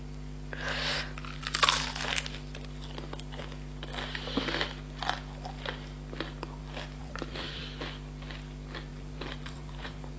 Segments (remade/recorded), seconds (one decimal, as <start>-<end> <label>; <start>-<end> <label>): 0.0-7.0 recorded; 7.0-7.6 remade; 7.6-8.9 recorded; 8.9-10.2 remade